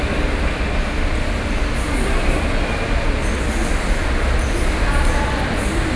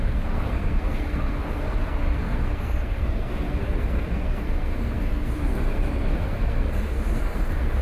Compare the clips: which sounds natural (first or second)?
first